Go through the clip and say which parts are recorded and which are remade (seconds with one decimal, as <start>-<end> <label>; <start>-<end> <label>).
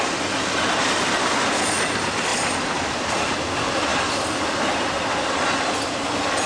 0.0-2.3 recorded; 2.3-3.1 remade; 3.1-6.5 recorded